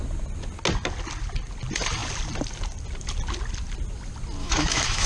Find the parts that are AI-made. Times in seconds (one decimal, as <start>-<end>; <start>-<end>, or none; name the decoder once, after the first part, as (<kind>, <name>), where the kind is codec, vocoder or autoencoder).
4.4-5.1 (autoencoder, DAC-VAE)